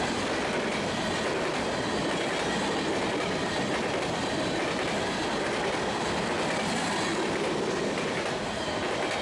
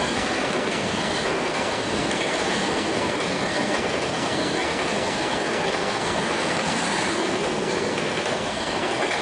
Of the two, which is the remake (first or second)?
second